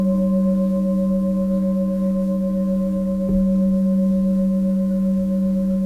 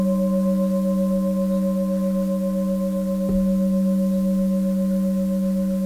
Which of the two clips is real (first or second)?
second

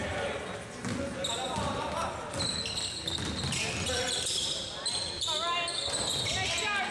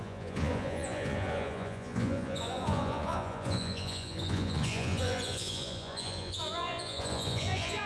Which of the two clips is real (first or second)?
first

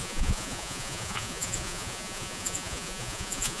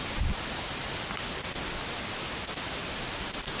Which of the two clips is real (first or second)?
second